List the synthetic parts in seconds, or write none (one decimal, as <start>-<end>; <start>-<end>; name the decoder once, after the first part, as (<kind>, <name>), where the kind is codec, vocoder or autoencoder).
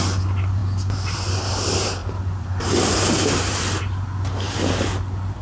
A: 2.0-4.0 (vocoder, BigVGAN v2)